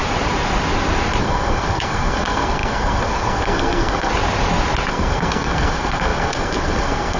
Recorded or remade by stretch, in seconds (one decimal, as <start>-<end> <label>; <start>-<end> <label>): 0.0-1.2 recorded; 1.2-4.1 remade; 4.1-4.9 recorded; 4.9-7.2 remade